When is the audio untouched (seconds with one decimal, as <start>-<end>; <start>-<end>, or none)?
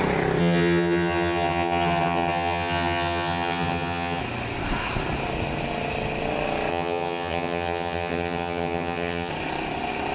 0.0-0.4; 4.2-6.7; 9.3-10.1